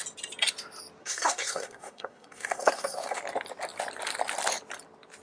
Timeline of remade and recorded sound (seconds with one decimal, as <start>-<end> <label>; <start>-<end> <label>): 0.0-1.0 recorded; 1.0-3.2 remade; 3.2-5.2 recorded